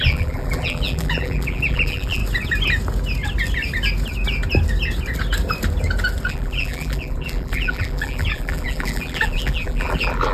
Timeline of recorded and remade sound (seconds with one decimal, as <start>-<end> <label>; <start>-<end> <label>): 0.0-2.2 remade; 2.2-6.3 recorded; 6.3-10.3 remade